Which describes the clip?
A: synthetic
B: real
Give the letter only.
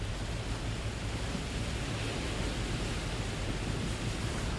B